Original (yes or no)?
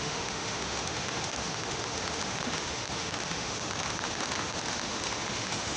no